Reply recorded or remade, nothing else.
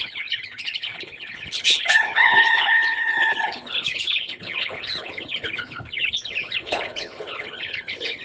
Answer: remade